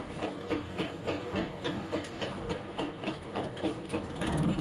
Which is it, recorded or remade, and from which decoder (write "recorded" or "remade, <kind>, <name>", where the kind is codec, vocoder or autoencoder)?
remade, codec, DAC